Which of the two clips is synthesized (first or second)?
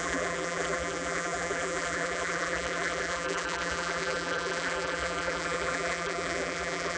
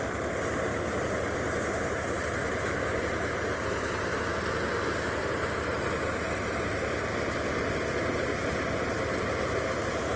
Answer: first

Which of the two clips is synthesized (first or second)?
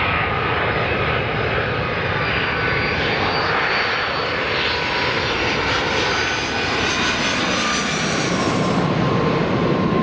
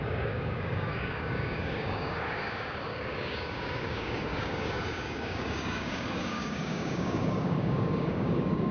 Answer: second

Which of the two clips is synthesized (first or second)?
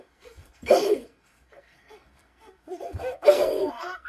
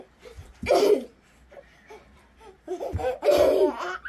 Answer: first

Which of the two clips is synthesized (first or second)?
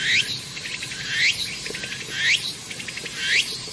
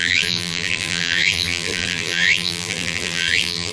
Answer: second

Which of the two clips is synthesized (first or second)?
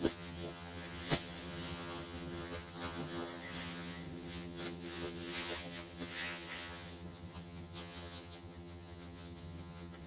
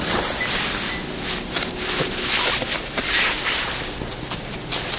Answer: first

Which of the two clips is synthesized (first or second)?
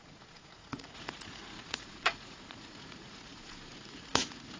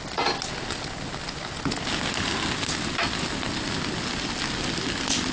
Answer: first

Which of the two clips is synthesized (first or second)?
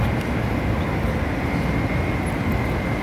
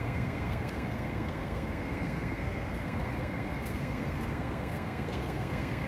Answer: second